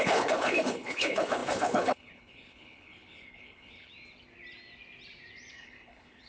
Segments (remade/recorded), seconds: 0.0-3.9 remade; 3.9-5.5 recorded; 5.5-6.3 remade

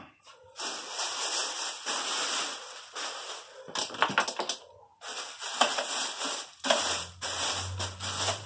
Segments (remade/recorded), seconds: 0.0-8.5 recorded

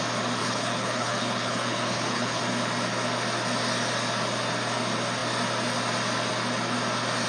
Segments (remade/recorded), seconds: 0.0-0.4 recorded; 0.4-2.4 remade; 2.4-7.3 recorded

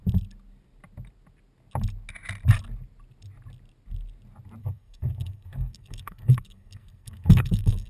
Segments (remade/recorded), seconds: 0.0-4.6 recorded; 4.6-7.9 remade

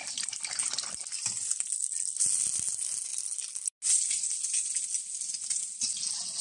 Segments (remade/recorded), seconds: 0.0-6.4 recorded

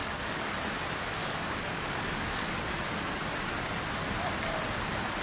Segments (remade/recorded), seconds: 0.0-0.5 remade; 0.5-1.2 recorded; 1.2-2.6 remade; 2.6-5.2 recorded

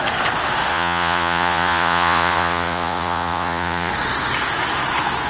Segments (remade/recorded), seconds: 0.0-0.7 recorded; 0.7-3.9 remade; 3.9-5.3 recorded

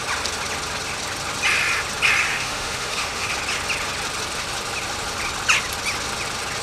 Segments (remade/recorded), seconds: 0.0-2.3 recorded; 2.3-3.3 remade; 3.3-6.6 recorded